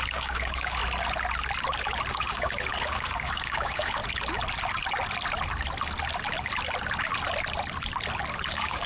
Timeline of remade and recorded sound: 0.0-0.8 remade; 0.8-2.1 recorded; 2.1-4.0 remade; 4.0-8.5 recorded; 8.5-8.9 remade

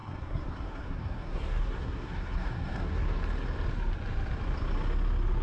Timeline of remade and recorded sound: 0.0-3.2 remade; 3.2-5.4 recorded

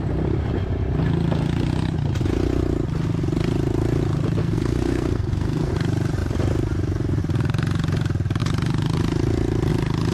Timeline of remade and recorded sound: 0.0-4.4 recorded; 4.4-5.7 remade; 5.7-10.1 recorded